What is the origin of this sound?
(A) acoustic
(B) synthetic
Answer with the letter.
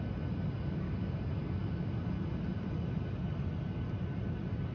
A